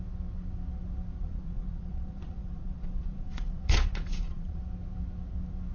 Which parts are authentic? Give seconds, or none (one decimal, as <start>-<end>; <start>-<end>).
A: 0.0-1.2; 4.6-5.7